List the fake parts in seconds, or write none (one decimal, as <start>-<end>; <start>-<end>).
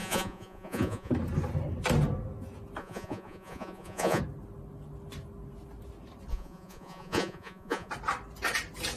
0.0-1.1; 2.8-4.2; 6.3-7.9